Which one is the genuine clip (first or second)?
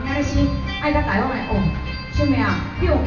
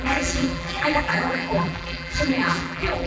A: first